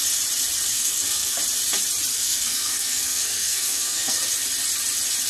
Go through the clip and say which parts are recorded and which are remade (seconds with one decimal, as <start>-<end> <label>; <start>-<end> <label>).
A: 0.0-0.7 recorded; 0.7-1.4 remade; 1.4-2.1 recorded; 2.1-4.2 remade; 4.2-5.3 recorded